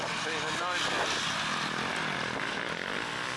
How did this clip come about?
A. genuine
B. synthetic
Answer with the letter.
A